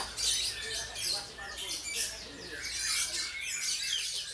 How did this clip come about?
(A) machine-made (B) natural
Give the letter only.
B